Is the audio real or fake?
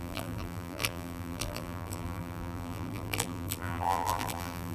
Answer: fake